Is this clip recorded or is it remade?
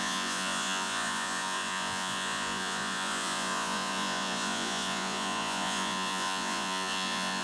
remade